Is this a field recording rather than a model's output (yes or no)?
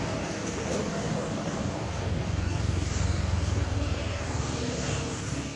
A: no